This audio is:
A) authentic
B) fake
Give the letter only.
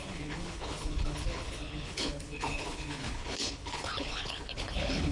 B